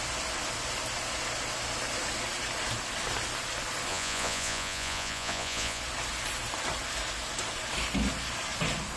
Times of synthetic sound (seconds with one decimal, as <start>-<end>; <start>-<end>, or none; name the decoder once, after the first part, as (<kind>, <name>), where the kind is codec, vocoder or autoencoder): 3.9-5.8 (vocoder, Vocos)